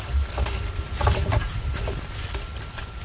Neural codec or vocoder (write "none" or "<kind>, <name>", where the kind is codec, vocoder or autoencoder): none